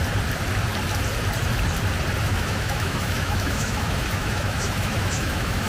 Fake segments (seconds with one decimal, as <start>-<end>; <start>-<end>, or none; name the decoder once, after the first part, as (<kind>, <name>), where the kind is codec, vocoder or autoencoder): 2.2-5.7 (autoencoder, DAC-VAE)